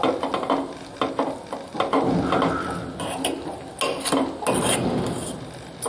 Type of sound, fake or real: real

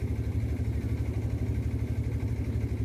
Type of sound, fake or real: real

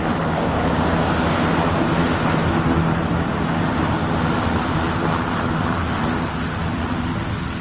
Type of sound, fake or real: real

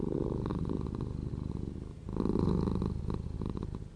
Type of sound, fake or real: real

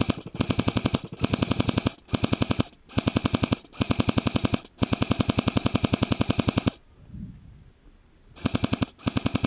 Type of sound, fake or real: real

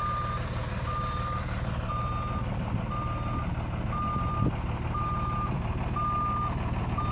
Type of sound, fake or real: real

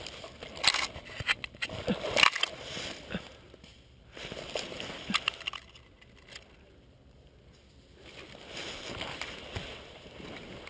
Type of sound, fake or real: real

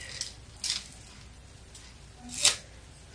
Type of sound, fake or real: real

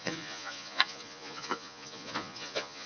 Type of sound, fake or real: fake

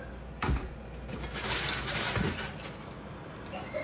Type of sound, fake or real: real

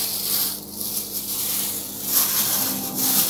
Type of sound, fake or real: real